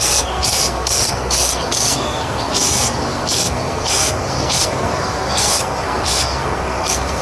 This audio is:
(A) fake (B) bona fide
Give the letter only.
A